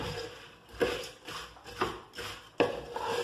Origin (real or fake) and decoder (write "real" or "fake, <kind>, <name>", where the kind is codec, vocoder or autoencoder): real